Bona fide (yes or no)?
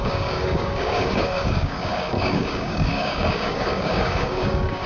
no